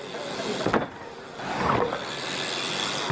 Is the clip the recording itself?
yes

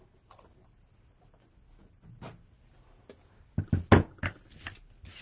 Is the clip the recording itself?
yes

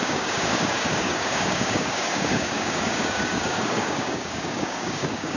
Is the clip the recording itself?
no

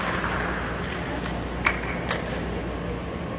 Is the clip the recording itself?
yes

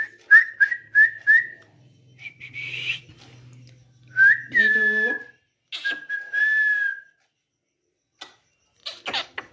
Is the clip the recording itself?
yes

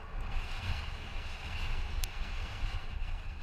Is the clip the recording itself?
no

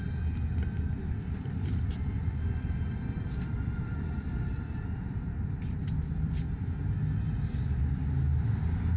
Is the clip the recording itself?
yes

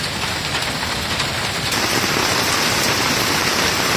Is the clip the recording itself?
no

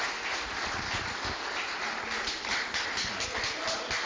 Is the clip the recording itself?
yes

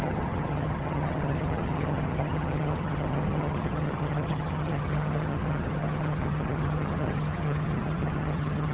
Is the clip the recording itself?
no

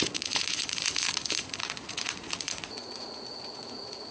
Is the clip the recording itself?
no